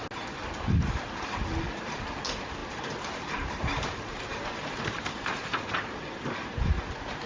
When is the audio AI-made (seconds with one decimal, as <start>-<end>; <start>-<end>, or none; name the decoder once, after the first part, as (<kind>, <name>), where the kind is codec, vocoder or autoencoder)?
2.6-7.3 (vocoder, BigVGAN v2)